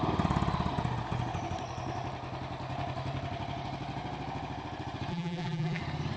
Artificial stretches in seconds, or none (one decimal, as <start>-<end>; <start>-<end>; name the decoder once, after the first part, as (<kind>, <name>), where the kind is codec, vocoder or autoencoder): 5.1-5.8 (vocoder, BigVGAN v2)